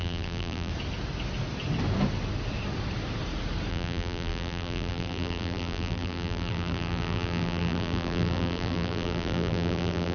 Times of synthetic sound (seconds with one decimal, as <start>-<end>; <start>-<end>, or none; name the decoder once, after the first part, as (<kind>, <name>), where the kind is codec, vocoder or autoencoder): 0.0-0.7 (vocoder, BigVGAN v2); 3.7-10.1